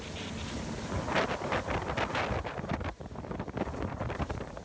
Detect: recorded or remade recorded